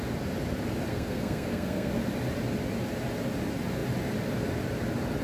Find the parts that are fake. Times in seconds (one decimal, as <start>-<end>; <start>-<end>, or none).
0.9-1.9